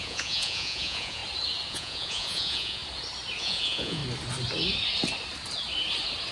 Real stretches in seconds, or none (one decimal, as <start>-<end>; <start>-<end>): 1.2-1.7; 2.8-3.4; 4.0-6.3